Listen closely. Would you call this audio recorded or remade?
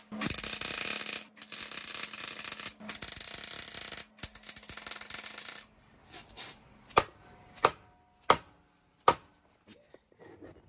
recorded